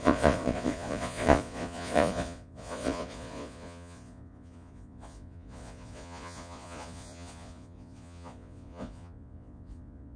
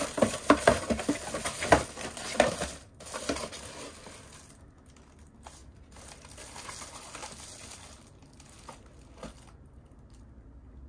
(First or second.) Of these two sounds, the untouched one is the second